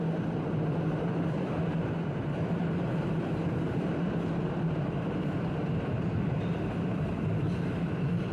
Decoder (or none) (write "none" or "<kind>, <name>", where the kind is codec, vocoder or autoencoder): vocoder, BigVGAN v2